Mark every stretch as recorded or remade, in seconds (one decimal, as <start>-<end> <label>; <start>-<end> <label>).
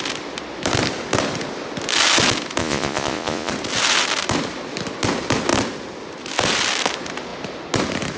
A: 0.0-2.6 recorded; 2.6-3.5 remade; 3.5-8.2 recorded